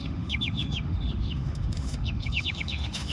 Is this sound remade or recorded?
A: remade